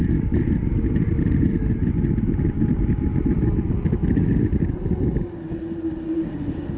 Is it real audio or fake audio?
real